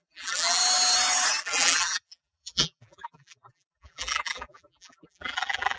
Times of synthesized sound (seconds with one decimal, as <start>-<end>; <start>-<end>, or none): 0.0-0.6; 1.4-5.8